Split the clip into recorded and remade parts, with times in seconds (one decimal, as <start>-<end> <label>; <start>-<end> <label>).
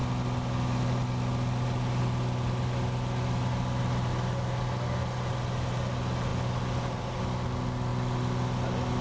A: 0.0-9.0 recorded